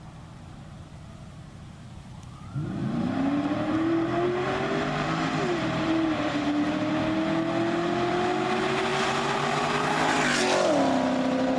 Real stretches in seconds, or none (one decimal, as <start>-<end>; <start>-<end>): 0.0-2.8; 6.4-8.9; 10.4-11.6